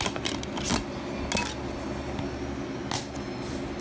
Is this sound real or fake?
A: real